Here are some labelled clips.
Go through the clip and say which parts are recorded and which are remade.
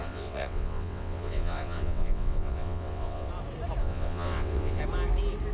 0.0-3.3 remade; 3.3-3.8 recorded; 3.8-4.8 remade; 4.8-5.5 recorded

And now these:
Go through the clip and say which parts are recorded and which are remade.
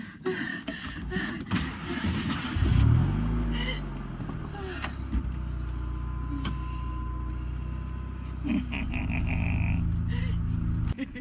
0.0-0.5 recorded; 0.5-1.3 remade; 1.3-11.2 recorded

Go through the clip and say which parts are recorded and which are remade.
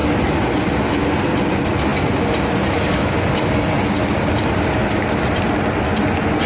0.0-6.5 recorded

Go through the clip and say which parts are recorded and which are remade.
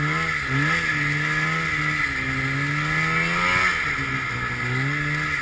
0.0-5.4 recorded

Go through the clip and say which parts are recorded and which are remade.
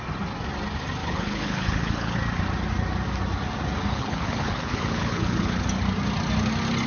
0.0-1.0 recorded; 1.0-2.2 remade; 2.2-3.9 recorded; 3.9-5.6 remade; 5.6-6.9 recorded